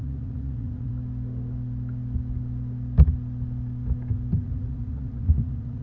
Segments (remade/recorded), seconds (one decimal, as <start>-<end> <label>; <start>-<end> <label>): 0.0-0.9 remade; 0.9-4.4 recorded; 4.4-5.8 remade